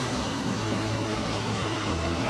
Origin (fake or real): fake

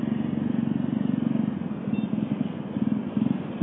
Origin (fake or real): real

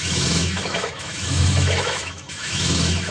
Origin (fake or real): fake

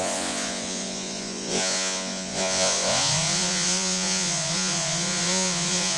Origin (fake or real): fake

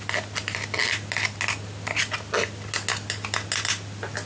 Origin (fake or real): real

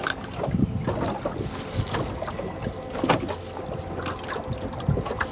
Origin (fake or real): real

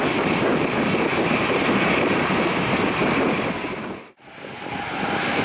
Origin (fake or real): real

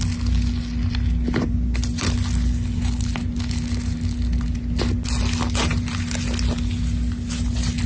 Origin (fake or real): real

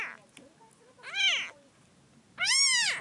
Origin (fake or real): real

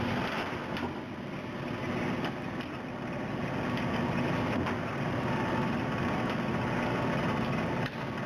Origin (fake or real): real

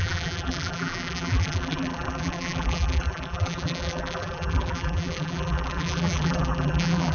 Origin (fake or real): fake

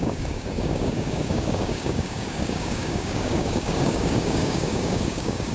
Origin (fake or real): fake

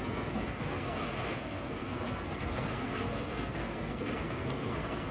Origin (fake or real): fake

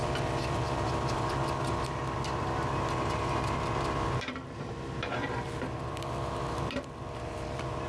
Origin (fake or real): fake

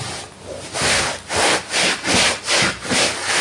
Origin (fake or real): real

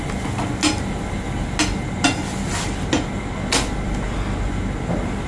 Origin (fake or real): real